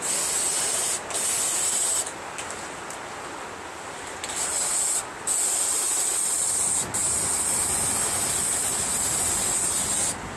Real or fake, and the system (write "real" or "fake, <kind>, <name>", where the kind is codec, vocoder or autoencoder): real